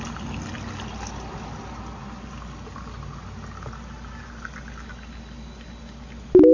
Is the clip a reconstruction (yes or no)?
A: no